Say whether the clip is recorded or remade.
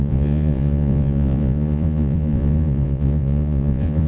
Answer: remade